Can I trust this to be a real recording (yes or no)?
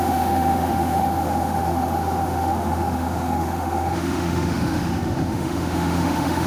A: no